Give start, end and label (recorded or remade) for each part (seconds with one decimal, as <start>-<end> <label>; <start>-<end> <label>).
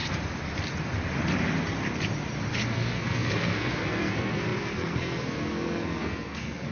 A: 0.0-2.7 recorded; 2.7-6.7 remade